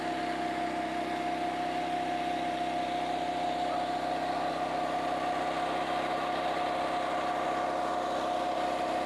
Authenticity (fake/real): real